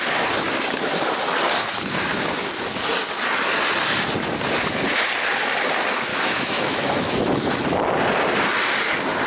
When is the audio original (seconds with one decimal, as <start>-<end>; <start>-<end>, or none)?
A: 0.0-6.1; 7.3-9.3